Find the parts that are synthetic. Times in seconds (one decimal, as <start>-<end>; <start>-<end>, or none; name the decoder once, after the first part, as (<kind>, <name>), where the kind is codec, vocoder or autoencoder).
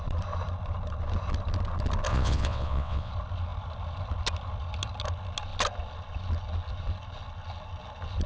2.1-3.1 (vocoder, WaveNeXt)